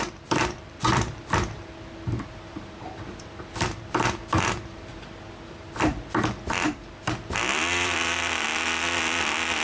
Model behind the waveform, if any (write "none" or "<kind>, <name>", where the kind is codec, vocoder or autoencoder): vocoder, BigVGAN v2